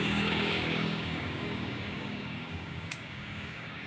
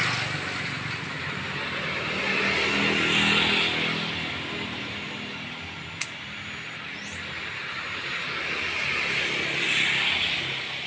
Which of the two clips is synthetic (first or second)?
first